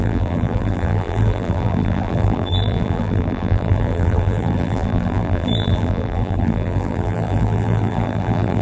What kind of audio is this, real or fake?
fake